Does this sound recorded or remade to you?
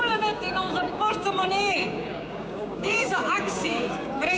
remade